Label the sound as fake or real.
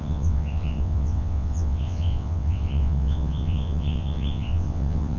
fake